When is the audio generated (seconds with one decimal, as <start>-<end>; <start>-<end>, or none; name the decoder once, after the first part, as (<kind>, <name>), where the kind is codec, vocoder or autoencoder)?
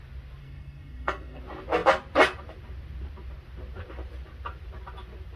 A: 0.4-1.4 (codec, SNAC)